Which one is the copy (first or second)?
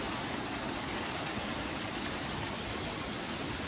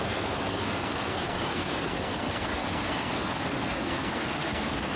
second